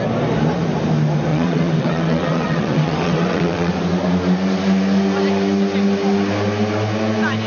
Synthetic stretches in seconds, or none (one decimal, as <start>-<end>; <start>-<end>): 1.3-3.7